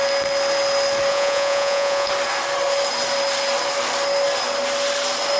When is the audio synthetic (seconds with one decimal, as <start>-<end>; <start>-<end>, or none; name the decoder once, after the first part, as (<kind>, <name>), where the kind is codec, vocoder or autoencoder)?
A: 1.1-2.1 (vocoder, Vocos)